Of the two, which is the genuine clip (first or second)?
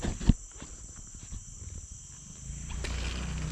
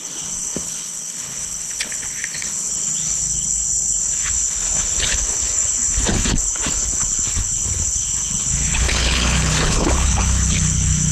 first